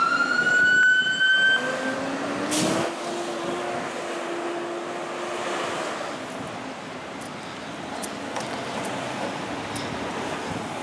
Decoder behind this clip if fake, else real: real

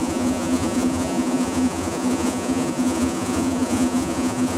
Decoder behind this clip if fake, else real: fake, vocoder, Vocos